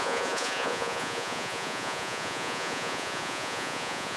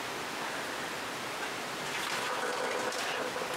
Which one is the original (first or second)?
second